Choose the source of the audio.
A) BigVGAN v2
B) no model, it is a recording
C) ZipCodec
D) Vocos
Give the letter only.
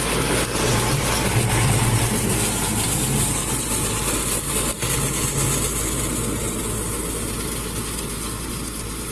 B